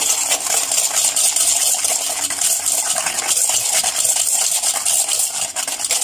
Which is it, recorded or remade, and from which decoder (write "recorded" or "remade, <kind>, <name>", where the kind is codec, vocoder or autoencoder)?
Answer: recorded